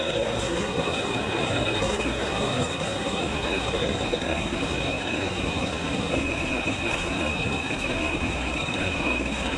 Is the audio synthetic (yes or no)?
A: yes